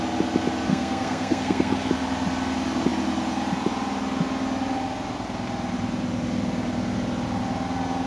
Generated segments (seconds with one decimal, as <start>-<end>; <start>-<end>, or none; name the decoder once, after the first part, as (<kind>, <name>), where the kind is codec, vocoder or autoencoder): 0.7-1.9 (codec, SNAC)

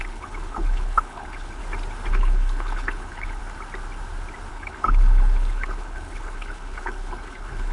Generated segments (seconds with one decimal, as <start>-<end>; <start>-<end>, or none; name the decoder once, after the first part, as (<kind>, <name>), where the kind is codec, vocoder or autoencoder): 0.0-1.6 (codec, HILCodec); 2.1-3.4; 4.5-7.7

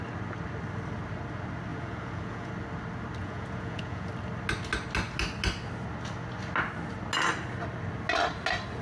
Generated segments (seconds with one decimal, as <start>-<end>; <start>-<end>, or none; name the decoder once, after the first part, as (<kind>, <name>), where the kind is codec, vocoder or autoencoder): 1.7-2.5 (vocoder, Vocos); 3.2-4.1

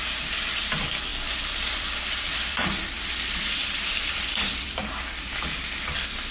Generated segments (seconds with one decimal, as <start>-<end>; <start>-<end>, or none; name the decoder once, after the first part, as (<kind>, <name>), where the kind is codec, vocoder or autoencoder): 1.1-4.9 (vocoder, BigVGAN v2)

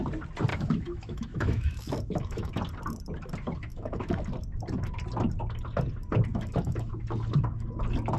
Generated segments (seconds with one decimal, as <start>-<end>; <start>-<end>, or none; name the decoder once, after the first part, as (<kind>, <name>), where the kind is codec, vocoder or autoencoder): 0.5-2.5 (autoencoder, DAC-VAE); 3.7-4.2; 6.3-6.9

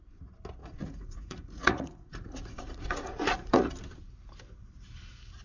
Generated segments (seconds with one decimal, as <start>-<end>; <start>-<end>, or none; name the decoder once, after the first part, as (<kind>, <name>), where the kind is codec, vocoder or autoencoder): 0.6-3.7 (vocoder, Vocos)

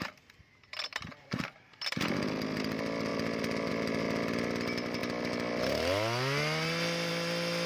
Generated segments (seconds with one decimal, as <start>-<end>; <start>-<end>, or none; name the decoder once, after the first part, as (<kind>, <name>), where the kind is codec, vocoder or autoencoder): none